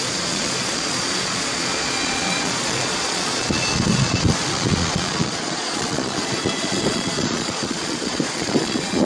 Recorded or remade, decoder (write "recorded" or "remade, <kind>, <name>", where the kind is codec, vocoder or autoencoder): remade, vocoder, Vocos